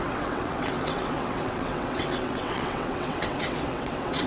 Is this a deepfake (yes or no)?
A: yes